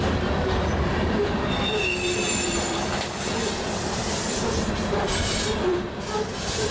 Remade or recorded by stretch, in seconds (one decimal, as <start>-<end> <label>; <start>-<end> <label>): 0.0-0.9 recorded; 0.9-4.4 remade; 4.4-5.7 recorded; 5.7-6.7 remade